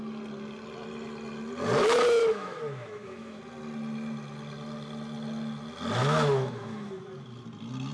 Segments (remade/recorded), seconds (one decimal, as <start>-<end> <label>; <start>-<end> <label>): 0.0-2.2 recorded; 2.2-3.4 remade; 3.4-6.0 recorded; 6.0-6.9 remade; 6.9-7.9 recorded